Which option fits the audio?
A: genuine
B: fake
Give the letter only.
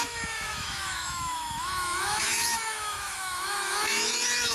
B